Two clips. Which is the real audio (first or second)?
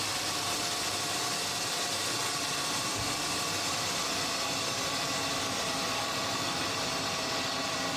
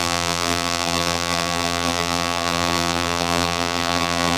first